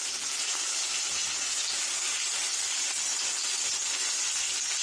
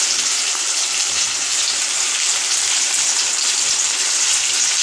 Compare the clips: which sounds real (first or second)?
first